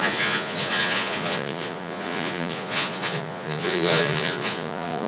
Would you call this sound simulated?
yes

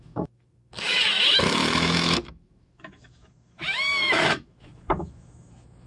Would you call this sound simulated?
yes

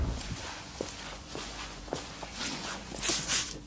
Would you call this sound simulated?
yes